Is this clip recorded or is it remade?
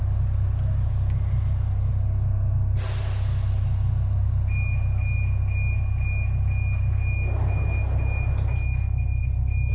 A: recorded